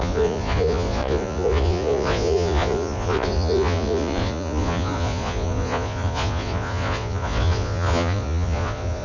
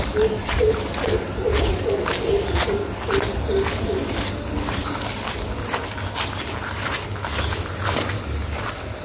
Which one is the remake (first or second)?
first